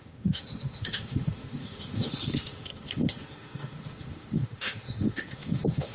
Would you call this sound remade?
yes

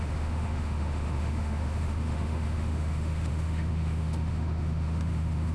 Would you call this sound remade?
yes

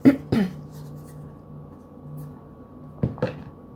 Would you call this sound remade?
no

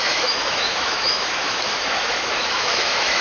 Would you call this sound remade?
yes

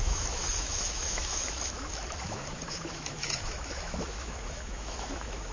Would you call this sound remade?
yes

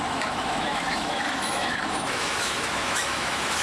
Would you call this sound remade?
yes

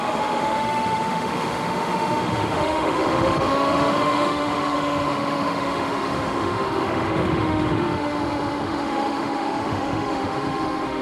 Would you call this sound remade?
yes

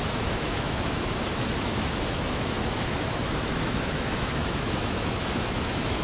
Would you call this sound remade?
yes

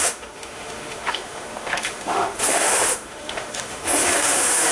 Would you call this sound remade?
yes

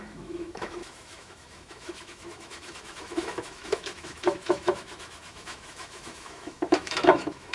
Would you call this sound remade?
yes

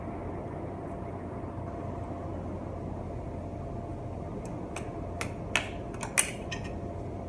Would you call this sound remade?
no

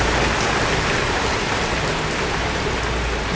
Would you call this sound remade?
no